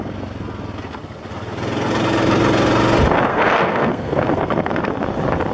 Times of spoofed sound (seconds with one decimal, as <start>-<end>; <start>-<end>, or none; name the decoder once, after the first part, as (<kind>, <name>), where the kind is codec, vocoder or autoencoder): 3.3-4.9 (codec, SNAC)